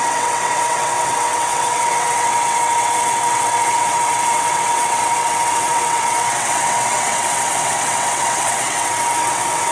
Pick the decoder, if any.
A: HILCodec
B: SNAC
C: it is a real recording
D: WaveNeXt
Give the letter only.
D